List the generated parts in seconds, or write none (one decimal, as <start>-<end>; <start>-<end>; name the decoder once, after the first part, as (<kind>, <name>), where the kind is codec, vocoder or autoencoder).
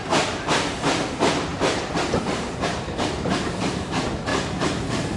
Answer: 1.5-3.9 (vocoder, BigVGAN v2); 4.3-5.2